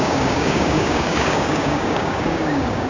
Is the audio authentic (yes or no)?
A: no